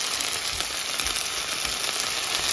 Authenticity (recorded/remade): recorded